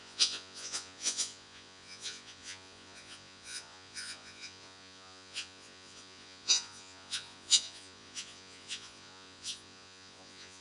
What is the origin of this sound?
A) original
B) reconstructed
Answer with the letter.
B